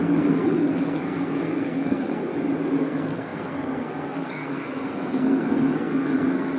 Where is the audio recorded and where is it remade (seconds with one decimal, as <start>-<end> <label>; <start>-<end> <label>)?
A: 0.0-2.3 remade; 2.3-2.8 recorded; 2.8-6.6 remade